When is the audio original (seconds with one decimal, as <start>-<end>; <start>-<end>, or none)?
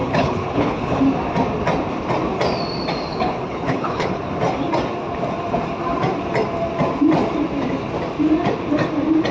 1.0-3.1; 4.3-9.3